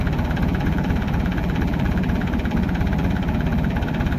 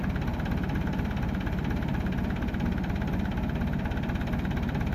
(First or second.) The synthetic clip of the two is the first